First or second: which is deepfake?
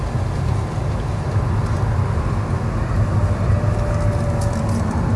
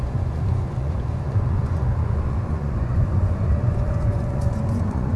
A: second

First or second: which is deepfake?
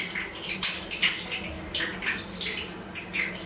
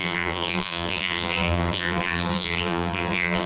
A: second